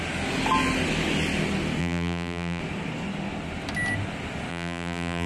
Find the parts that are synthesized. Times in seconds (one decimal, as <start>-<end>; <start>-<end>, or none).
1.8-2.6; 4.5-5.3